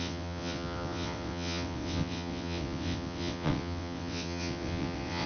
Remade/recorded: remade